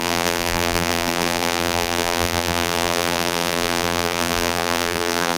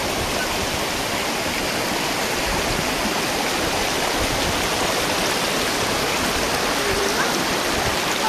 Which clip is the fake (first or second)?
first